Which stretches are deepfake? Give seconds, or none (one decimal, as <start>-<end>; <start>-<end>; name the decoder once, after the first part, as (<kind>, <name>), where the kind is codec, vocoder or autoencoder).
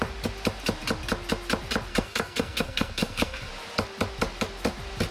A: 1.9-3.5 (codec, SNAC)